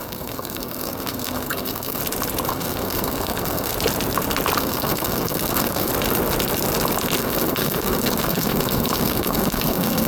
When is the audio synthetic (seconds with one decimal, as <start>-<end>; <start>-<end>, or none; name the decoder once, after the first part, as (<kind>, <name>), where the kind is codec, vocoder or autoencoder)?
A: 0.0-2.0 (codec, SNAC); 2.5-3.7; 4.6-5.9; 7.2-10.1